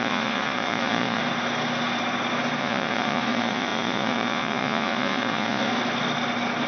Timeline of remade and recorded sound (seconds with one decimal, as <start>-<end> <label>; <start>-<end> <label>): 0.0-1.2 remade; 1.2-2.6 recorded; 2.6-5.7 remade; 5.7-6.7 recorded